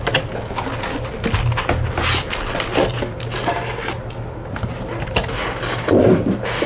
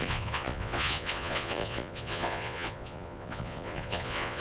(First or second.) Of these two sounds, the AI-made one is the second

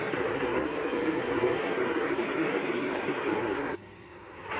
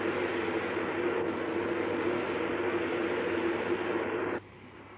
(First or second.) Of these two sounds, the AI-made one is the first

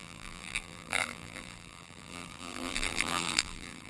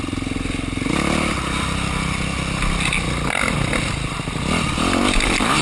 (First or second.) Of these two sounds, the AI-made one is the first